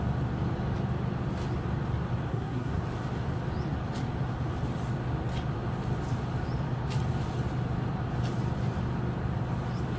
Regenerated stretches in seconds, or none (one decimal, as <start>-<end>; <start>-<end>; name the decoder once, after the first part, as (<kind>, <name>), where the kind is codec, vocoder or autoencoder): 2.3-2.8 (codec, SNAC)